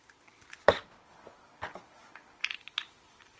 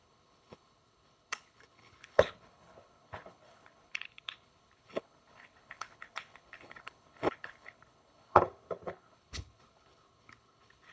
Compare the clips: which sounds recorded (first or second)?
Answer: first